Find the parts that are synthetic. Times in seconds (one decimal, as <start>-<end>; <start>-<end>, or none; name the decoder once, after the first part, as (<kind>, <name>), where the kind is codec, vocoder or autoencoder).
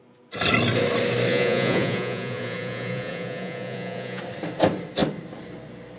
1.3-4.2 (vocoder, Vocos)